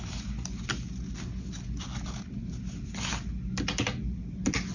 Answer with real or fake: real